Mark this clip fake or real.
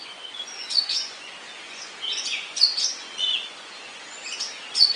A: fake